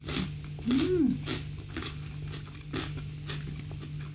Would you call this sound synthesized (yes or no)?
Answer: no